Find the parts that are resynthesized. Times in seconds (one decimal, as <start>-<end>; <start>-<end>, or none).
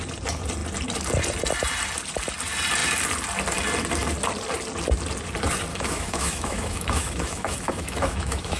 5.7-8.6